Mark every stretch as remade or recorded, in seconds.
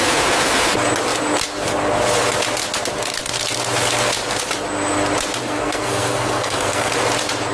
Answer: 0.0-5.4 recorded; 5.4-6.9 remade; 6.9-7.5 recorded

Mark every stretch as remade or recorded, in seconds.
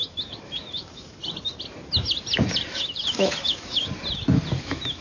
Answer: 0.0-1.2 remade; 1.2-2.7 recorded; 2.7-3.9 remade; 3.9-4.6 recorded; 4.6-5.0 remade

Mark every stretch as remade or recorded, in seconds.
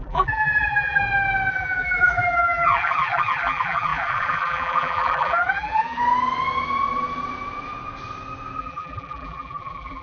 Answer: 0.0-1.0 remade; 1.0-1.5 recorded; 1.5-6.0 remade; 6.0-8.6 recorded; 8.6-10.0 remade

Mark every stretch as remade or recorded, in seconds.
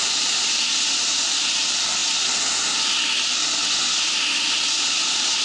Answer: 0.0-5.4 recorded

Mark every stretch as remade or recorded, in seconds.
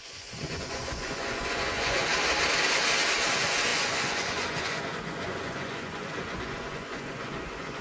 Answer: 0.0-2.1 remade; 2.1-3.3 recorded; 3.3-7.8 remade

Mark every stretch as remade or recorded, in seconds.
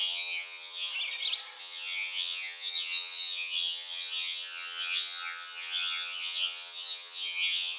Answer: 0.0-0.9 remade; 0.9-1.6 recorded; 1.6-7.8 remade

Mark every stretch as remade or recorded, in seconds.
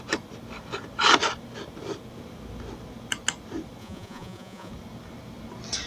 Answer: 0.0-3.8 recorded; 3.8-4.7 remade; 4.7-5.9 recorded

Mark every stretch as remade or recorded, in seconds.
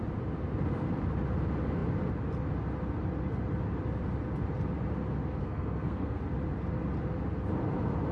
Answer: 0.0-5.4 recorded; 5.4-6.2 remade; 6.2-8.1 recorded